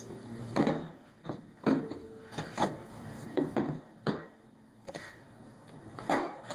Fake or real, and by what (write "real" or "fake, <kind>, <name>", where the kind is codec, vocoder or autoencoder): fake, codec, DAC